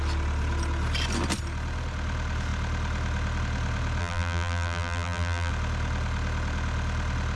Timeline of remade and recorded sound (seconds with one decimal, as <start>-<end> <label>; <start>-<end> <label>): 0.0-4.0 recorded; 4.0-5.5 remade; 5.5-7.4 recorded